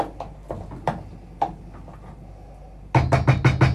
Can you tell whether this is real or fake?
real